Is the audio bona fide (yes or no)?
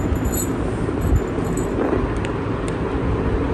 yes